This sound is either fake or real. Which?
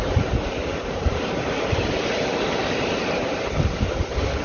fake